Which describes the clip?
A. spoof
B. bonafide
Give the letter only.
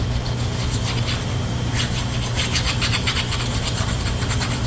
B